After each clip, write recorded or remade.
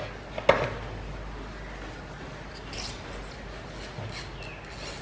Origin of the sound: recorded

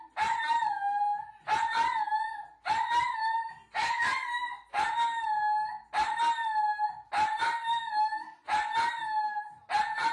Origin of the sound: recorded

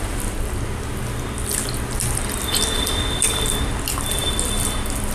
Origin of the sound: recorded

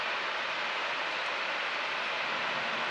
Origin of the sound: recorded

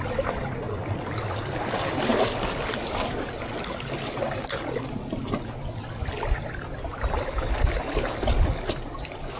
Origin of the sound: recorded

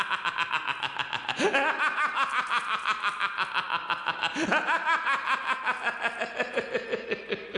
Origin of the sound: recorded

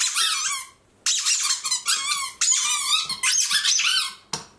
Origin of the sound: recorded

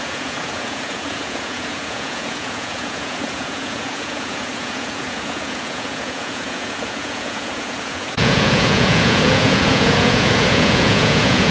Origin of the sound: remade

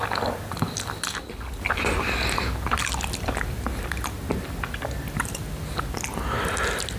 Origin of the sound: recorded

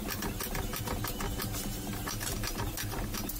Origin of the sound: recorded